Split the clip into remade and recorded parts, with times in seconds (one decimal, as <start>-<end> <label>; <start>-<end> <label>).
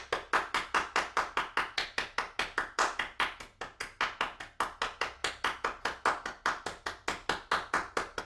0.0-8.2 recorded